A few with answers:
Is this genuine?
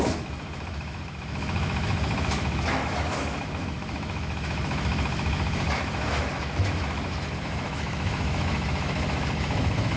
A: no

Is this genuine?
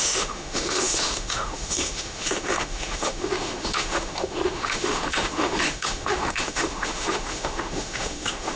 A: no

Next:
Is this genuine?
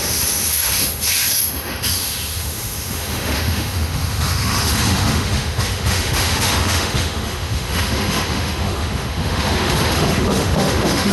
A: no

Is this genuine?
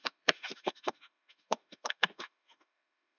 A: no